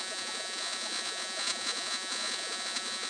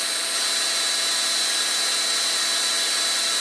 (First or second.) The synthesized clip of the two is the first